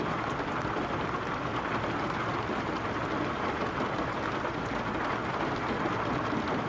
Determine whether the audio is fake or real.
real